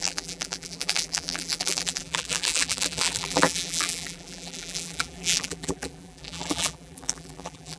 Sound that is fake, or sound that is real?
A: fake